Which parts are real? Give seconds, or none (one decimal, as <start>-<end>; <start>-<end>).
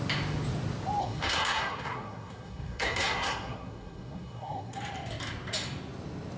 0.0-1.0; 4.8-6.4